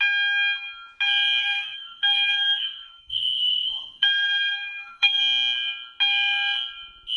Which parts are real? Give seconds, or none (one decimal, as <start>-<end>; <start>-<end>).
0.0-1.4; 5.2-7.2